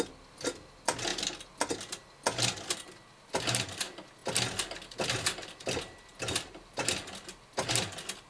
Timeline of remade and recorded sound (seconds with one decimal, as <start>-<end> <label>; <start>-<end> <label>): 0.0-8.3 recorded